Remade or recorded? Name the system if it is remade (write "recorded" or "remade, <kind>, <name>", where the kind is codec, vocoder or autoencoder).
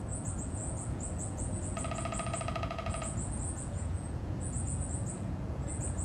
remade, vocoder, Vocos